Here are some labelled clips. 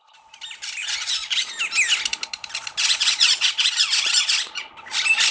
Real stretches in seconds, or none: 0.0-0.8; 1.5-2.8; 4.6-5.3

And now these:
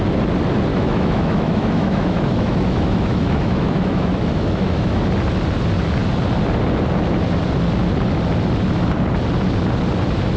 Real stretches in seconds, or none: 0.0-0.7; 5.0-10.4

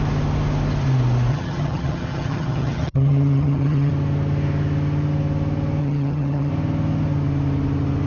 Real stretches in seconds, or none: 0.0-1.3; 3.9-5.8; 6.5-8.1

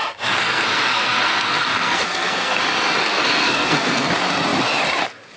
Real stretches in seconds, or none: 2.6-3.0; 4.1-5.4

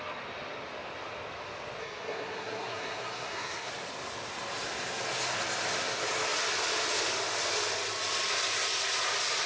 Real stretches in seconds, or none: 0.0-1.8; 3.7-9.5